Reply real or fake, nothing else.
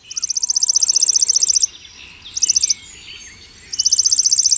real